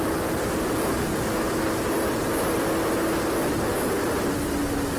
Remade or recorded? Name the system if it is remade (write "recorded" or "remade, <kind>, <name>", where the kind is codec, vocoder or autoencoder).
recorded